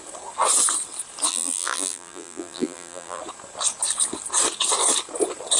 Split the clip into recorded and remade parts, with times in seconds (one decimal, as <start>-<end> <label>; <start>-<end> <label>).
0.0-1.3 recorded; 1.3-3.2 remade; 3.2-5.6 recorded